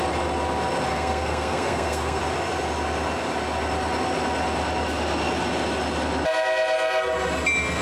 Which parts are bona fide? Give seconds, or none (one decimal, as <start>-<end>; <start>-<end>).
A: 0.0-0.9; 2.2-7.8